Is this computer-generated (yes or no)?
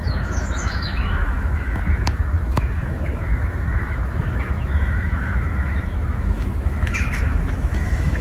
yes